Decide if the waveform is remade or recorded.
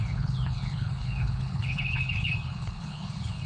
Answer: remade